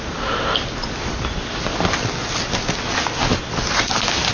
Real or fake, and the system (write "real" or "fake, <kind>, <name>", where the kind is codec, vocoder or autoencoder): real